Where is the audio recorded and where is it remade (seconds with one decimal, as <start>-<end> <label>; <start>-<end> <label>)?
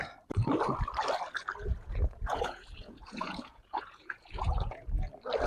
0.0-1.6 recorded; 1.6-4.9 remade; 4.9-5.5 recorded